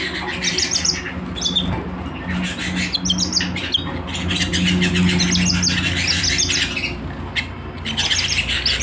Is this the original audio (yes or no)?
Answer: yes